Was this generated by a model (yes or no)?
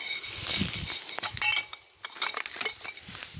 no